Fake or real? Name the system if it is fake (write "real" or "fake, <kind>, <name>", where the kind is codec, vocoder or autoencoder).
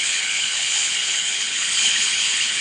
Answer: fake, codec, HILCodec